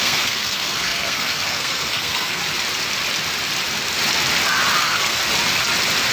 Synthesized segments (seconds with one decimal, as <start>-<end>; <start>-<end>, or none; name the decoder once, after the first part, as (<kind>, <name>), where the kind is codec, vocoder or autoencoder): 0.0-2.4 (codec, SNAC); 4.8-5.2

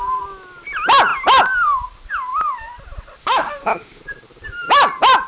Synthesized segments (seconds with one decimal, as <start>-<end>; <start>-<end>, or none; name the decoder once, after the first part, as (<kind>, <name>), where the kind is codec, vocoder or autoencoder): 3.2-4.0 (autoencoder, DAC-VAE)

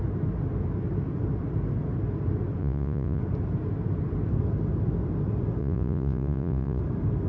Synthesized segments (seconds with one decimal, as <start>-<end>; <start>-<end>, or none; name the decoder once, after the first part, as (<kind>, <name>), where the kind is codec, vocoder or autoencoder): 2.6-3.2 (vocoder, Vocos); 5.6-6.8

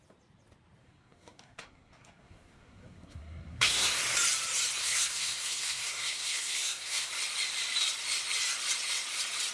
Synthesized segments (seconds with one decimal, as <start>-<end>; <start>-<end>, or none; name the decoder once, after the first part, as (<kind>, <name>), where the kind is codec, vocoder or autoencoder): 0.8-4.0 (codec, SNAC); 4.8-7.1

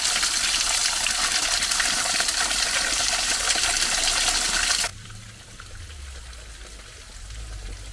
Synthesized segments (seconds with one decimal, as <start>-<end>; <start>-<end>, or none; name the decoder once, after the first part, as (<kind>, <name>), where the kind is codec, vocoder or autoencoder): 4.9-6.0 (vocoder, BigVGAN v2)

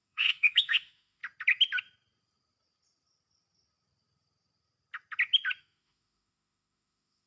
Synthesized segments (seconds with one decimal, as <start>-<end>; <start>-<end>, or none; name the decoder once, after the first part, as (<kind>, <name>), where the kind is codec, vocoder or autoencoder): 0.0-1.2 (autoencoder, DAC-VAE); 5.6-7.3